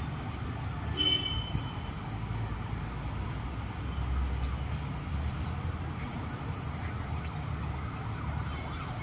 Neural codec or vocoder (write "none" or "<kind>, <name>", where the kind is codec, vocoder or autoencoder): none